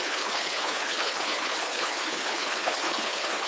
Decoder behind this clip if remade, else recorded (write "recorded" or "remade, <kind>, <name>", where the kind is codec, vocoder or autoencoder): remade, codec, HILCodec